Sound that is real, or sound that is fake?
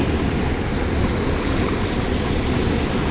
real